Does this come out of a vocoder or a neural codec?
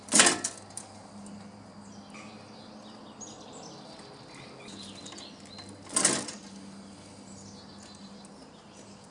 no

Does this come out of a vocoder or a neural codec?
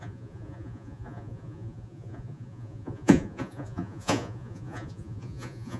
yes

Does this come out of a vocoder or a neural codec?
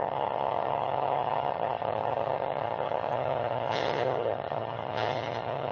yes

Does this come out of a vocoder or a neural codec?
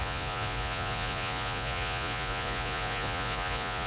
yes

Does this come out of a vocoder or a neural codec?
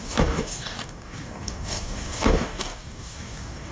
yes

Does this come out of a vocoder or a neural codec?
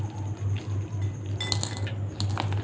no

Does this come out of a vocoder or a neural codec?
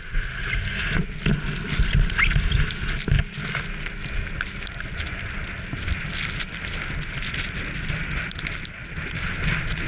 no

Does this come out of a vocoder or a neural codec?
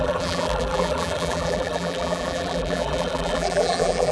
yes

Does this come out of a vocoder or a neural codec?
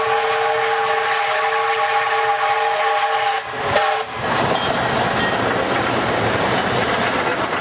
no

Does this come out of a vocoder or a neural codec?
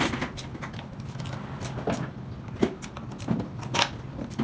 no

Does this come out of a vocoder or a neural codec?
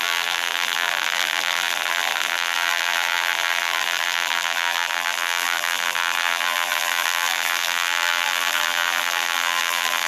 yes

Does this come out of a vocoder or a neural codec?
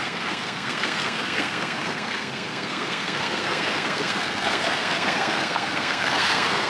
yes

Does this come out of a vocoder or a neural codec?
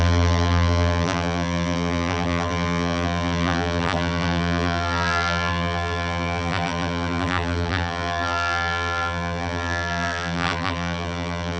yes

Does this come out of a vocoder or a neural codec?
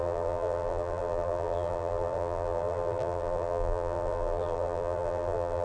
yes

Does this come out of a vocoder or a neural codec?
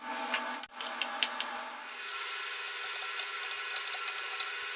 no